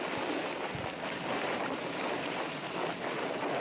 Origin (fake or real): real